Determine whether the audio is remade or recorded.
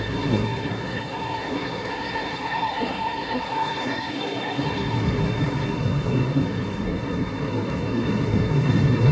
remade